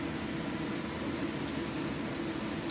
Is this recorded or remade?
recorded